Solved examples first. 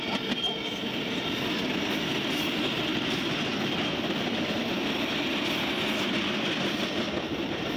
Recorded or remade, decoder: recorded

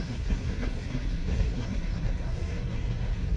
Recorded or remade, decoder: remade, codec, SNAC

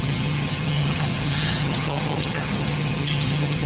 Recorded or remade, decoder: remade, vocoder, HiFi-GAN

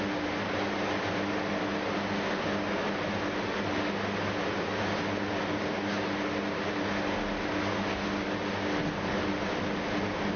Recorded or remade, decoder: recorded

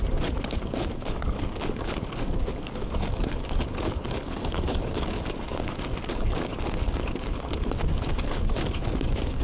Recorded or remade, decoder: remade, codec, DAC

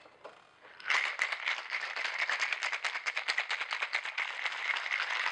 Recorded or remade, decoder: recorded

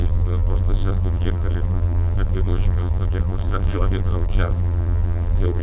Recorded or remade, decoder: remade, vocoder, BigVGAN v2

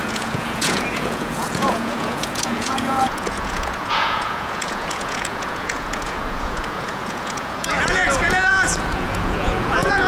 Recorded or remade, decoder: remade, vocoder, Vocos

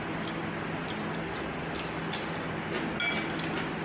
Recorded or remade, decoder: recorded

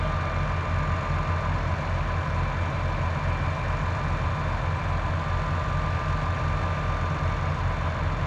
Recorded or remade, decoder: recorded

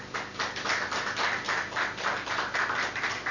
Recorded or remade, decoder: recorded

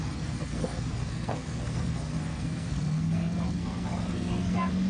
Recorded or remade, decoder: remade, codec, SNAC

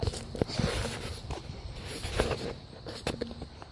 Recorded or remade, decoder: recorded